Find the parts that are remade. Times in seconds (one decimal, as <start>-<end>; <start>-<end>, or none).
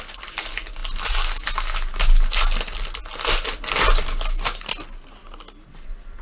none